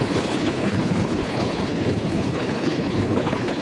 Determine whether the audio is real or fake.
fake